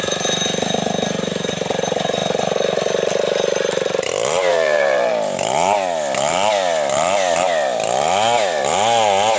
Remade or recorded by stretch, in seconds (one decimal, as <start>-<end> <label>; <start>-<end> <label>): 0.0-4.5 recorded; 4.5-5.1 remade; 5.1-9.4 recorded